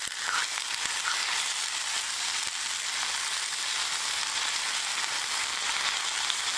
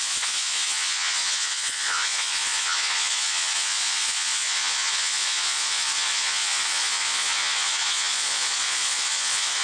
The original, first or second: first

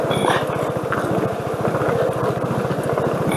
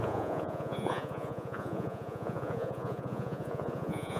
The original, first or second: first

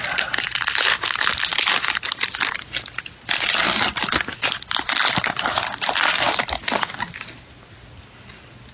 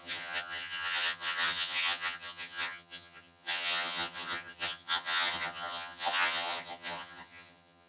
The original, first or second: first